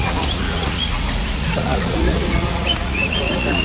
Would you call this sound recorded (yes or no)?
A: no